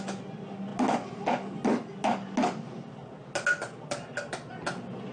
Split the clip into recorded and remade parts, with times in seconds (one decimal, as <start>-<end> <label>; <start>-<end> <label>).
0.0-5.1 recorded